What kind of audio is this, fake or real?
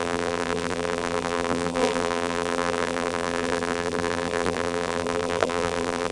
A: fake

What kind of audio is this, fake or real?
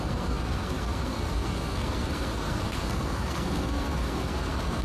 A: fake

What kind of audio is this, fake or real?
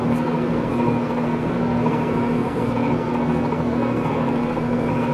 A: fake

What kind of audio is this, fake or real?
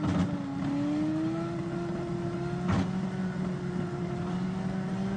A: real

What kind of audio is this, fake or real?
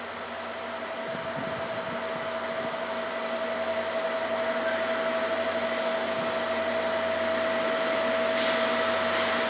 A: real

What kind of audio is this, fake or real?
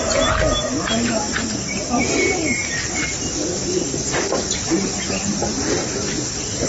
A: real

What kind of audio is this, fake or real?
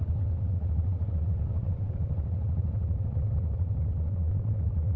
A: fake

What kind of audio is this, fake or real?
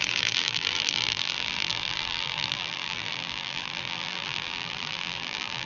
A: fake